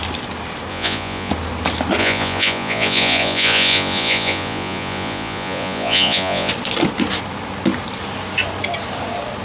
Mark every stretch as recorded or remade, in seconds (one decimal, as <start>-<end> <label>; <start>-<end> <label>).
0.0-0.7 recorded; 0.7-1.3 remade; 1.3-2.0 recorded; 2.0-6.5 remade; 6.5-9.4 recorded